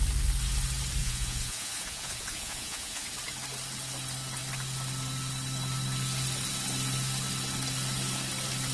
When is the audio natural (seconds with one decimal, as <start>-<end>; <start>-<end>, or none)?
0.0-1.0; 3.1-8.7